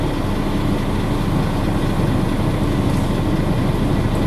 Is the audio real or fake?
real